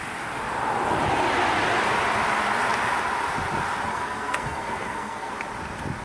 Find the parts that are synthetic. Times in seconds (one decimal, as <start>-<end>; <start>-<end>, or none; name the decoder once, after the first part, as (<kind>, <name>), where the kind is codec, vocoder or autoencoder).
3.9-5.3 (codec, SNAC)